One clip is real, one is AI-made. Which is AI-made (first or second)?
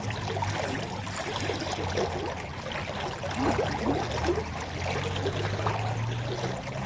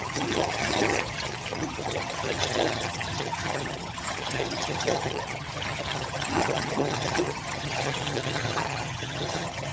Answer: second